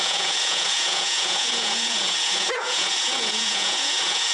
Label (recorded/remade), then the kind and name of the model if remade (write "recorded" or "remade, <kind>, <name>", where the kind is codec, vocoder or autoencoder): remade, vocoder, Vocos